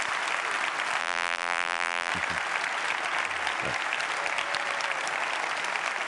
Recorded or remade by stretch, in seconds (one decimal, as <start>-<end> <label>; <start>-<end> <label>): 0.0-1.0 recorded; 1.0-2.1 remade; 2.1-6.1 recorded